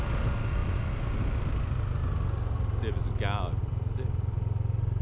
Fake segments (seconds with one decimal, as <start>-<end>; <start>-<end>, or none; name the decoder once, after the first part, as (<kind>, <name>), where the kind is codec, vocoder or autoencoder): none